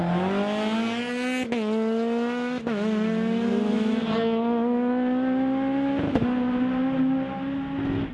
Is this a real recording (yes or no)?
yes